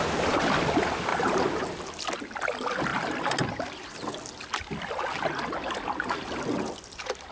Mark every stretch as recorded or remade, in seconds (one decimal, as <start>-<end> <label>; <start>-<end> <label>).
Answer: 0.0-7.3 recorded